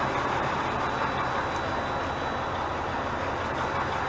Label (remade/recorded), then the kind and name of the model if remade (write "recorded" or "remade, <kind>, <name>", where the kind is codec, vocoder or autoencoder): recorded